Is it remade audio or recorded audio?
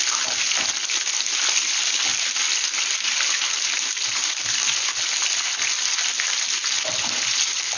recorded